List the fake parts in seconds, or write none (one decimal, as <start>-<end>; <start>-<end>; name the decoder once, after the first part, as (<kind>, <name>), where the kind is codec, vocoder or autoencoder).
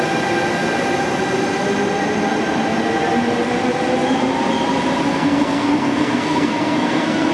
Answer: 5.1-7.3 (codec, SNAC)